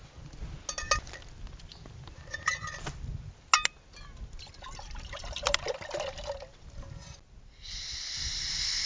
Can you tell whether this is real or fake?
real